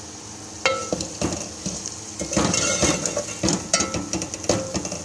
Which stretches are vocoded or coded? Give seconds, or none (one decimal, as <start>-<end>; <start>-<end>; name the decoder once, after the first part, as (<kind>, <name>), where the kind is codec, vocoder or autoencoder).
none